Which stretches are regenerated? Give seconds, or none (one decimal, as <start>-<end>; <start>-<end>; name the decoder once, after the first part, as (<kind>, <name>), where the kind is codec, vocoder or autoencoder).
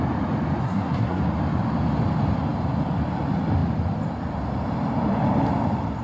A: 0.6-1.2 (codec, SNAC)